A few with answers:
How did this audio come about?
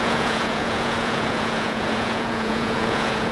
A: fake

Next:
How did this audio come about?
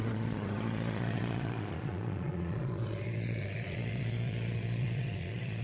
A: fake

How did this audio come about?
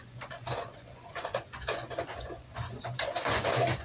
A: fake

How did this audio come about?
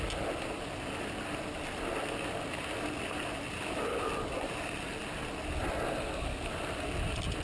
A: real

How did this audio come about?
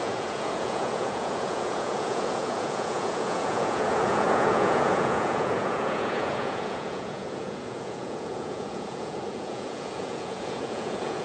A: fake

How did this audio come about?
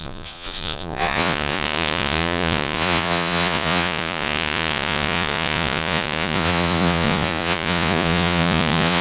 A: fake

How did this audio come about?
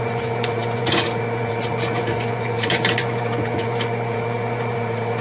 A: fake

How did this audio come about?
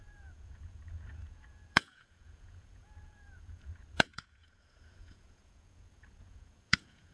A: fake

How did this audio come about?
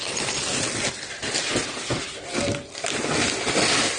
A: real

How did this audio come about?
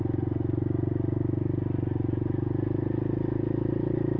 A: real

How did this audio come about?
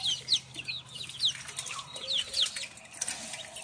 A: real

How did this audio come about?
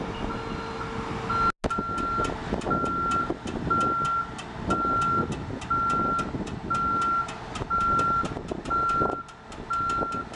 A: real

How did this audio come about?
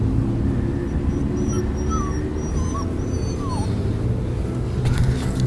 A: real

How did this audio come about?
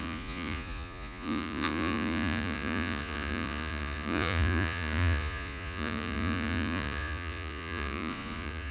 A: fake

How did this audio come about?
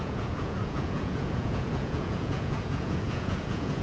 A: fake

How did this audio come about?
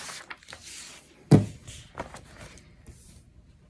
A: real